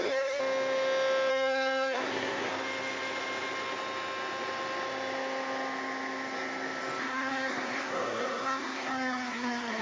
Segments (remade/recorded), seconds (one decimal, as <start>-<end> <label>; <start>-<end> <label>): 0.0-0.4 remade; 0.4-1.3 recorded; 1.3-2.5 remade; 2.5-7.0 recorded; 7.0-9.8 remade